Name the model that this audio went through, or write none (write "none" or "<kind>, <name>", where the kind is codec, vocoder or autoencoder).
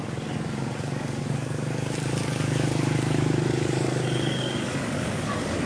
codec, DAC